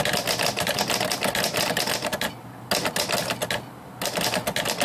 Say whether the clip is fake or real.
real